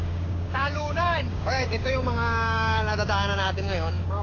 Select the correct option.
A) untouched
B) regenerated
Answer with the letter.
B